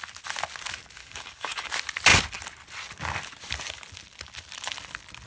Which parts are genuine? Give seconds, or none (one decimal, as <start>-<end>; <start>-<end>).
0.0-1.0; 1.7-5.3